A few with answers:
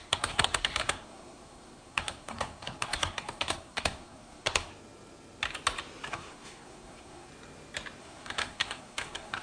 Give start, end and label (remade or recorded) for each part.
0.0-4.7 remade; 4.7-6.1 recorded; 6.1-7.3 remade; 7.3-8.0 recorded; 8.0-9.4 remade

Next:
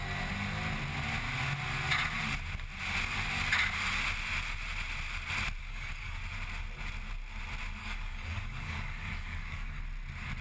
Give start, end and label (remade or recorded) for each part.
0.0-5.6 recorded; 5.6-6.2 remade; 6.2-7.8 recorded; 7.8-9.8 remade; 9.8-10.4 recorded

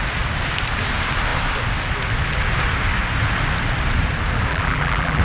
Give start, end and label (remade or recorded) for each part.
0.0-4.5 recorded; 4.5-5.2 remade

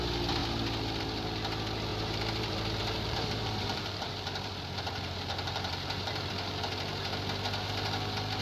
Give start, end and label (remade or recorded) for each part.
0.0-1.9 recorded; 1.9-6.3 remade; 6.3-8.4 recorded